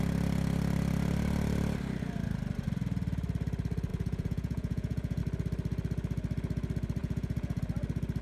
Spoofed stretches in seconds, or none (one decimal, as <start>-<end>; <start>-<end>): 3.9-5.2; 7.0-7.6